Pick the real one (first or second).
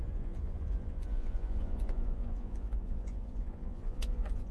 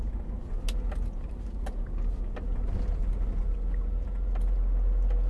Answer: second